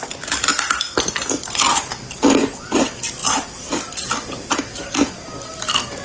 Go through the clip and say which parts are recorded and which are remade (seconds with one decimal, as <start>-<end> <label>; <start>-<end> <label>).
0.0-3.2 recorded; 3.2-4.5 remade; 4.5-6.0 recorded